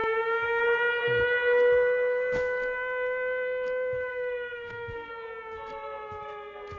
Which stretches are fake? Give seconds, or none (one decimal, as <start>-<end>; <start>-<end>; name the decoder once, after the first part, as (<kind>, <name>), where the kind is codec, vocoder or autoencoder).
0.0-0.6 (codec, SNAC); 4.1-5.1